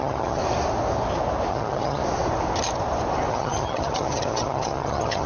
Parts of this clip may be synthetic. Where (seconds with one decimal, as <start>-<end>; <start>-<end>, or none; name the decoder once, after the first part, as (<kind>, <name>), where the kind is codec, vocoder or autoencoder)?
0.0-0.4 (vocoder, HiFi-GAN); 1.5-2.0; 3.3-5.3